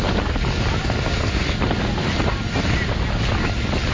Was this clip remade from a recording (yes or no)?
no